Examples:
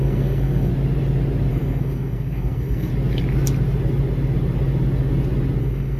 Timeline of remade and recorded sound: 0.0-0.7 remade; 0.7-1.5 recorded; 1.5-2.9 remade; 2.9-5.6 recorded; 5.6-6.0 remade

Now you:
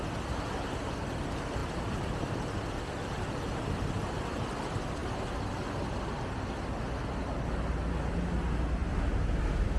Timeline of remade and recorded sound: 0.0-1.6 recorded; 1.6-2.2 remade; 2.2-8.8 recorded; 8.8-9.8 remade

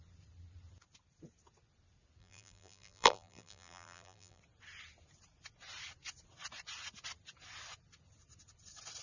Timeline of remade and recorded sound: 0.0-2.2 recorded; 2.2-4.4 remade; 4.4-9.0 recorded

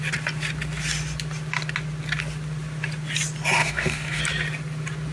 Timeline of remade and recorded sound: 0.0-3.6 recorded; 3.6-4.2 remade; 4.2-5.1 recorded

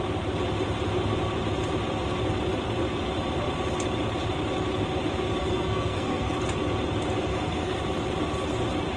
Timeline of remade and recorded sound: 0.0-5.4 recorded; 5.4-6.3 remade; 6.3-7.3 recorded; 7.3-7.8 remade; 7.8-9.0 recorded

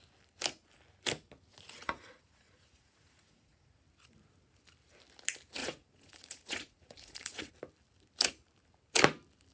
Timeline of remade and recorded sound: 0.0-1.5 recorded; 1.5-3.8 remade; 3.8-5.6 recorded; 5.6-7.5 remade; 7.5-9.5 recorded